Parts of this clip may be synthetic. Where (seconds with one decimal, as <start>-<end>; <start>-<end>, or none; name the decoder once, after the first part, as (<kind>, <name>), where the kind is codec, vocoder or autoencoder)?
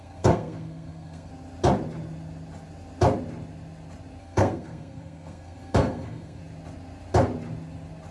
0.0-1.3 (codec, SNAC); 4.2-6.4